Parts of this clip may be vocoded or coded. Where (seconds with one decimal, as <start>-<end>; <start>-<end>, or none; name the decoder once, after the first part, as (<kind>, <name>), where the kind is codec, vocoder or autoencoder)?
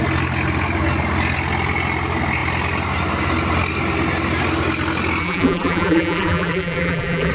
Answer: 5.2-7.3 (vocoder, BigVGAN v2)